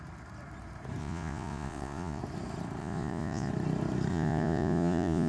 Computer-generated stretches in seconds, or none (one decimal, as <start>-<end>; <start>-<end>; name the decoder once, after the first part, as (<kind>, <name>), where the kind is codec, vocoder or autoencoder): 1.0-2.2 (vocoder, Vocos); 2.8-3.5; 4.1-5.3